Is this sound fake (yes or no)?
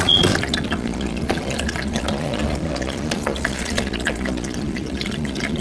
yes